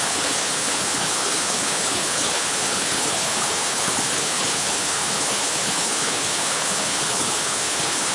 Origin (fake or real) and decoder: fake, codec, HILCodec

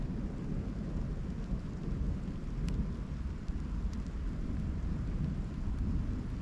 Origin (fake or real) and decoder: real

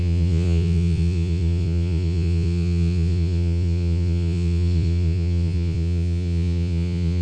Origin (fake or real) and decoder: fake, vocoder, Vocos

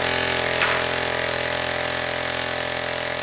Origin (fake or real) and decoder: real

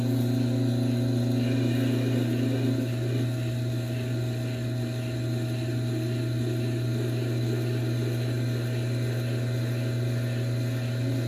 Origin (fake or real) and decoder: real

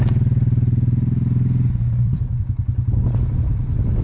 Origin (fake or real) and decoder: real